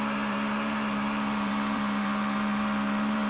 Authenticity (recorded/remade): remade